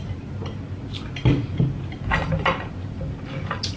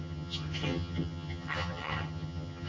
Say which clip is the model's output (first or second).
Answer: second